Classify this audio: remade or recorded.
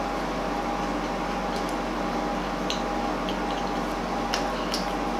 recorded